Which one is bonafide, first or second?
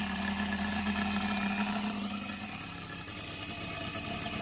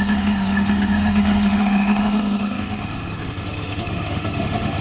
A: first